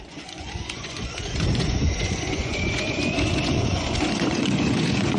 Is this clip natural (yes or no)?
no